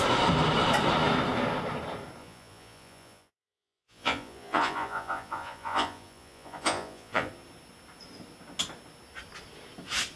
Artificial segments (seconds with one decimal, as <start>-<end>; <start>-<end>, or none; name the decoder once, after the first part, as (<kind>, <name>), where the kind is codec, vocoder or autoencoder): 2.2-7.3 (vocoder, Vocos)